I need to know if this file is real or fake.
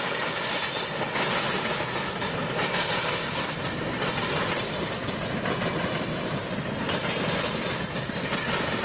real